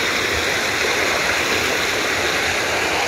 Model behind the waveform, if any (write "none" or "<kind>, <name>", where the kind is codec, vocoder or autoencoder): none